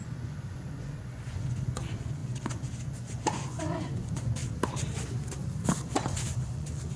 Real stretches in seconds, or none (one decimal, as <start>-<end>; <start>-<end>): 4.4-5.6